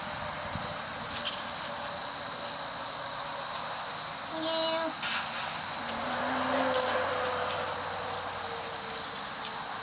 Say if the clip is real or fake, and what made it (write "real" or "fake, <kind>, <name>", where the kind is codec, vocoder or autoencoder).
real